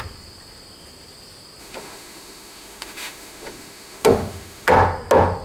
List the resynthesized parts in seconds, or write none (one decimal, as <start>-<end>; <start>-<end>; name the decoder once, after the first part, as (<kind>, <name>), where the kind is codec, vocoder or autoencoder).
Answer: 1.6-4.7 (autoencoder, DAC-VAE)